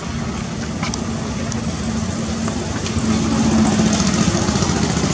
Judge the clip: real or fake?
real